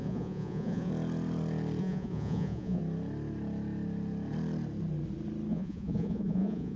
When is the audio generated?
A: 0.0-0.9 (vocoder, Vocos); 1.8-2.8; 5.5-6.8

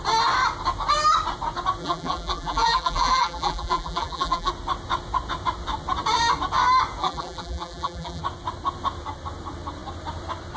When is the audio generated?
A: 1.8-4.5 (vocoder, BigVGAN v2); 7.0-8.2

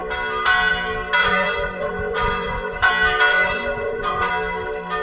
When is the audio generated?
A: 1.2-2.9 (vocoder, Vocos); 3.3-4.3

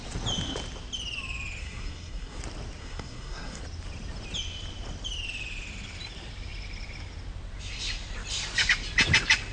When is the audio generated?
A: 1.6-2.4 (codec, SNAC); 2.8-3.6

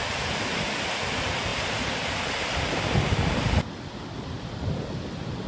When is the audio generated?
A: none

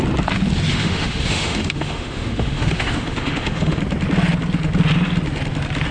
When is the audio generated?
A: 0.7-3.8 (autoencoder, DAC-VAE)